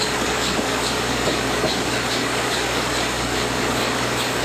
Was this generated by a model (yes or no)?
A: yes